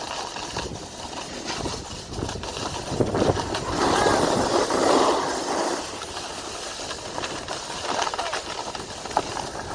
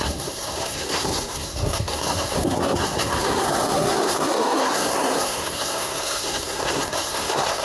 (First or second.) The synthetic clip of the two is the second